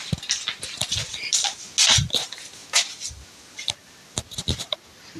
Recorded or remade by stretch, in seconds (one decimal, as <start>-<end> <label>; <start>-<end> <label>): 0.0-5.2 recorded